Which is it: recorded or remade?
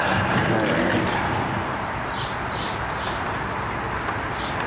recorded